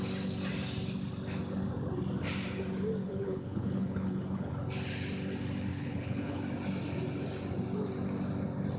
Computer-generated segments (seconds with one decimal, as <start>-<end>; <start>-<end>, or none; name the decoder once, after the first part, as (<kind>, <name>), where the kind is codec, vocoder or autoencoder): 3.0-4.5 (codec, HILCodec); 5.7-6.4